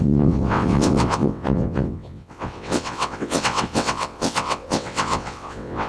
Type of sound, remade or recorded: remade